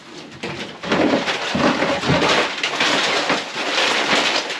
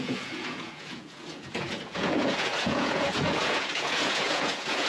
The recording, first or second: first